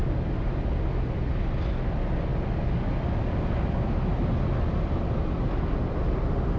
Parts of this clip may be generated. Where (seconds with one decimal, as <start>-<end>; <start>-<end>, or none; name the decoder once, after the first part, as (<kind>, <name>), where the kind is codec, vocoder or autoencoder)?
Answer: none